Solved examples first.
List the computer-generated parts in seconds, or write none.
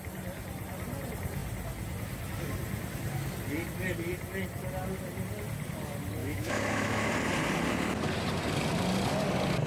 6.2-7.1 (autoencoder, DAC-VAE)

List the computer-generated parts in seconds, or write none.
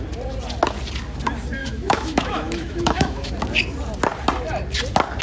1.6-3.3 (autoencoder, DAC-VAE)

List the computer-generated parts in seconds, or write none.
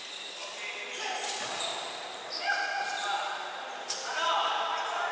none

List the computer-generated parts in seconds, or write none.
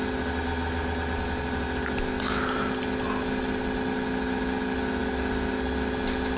none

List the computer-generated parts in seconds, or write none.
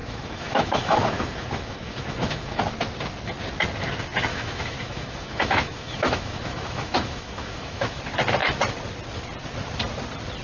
0.0-2.6 (autoencoder, DAC-VAE); 4.3-8.0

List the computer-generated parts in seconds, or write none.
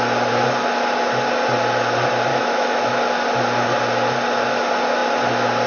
2.3-2.9 (autoencoder, DAC-VAE)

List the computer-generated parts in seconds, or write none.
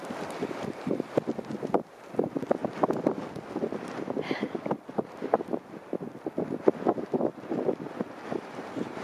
none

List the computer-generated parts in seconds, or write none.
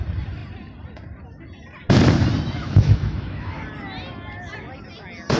2.6-3.6 (autoencoder, DAC-VAE)